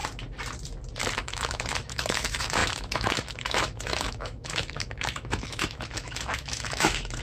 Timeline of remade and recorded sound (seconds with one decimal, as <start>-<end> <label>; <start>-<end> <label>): 0.0-1.2 recorded; 1.2-7.2 remade